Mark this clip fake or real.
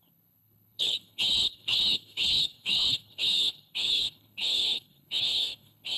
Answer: fake